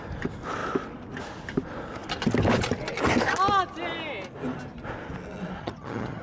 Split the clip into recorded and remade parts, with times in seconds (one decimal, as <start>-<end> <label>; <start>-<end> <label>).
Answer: 0.0-5.6 recorded; 5.6-6.2 remade